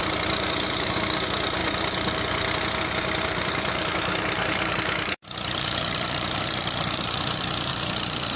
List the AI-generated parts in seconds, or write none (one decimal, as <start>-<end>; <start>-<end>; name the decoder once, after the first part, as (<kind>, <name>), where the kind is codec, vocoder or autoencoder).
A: 0.0-8.4 (vocoder, BigVGAN v2)